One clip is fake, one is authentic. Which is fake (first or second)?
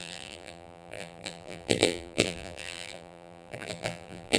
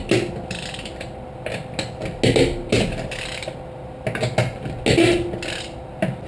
first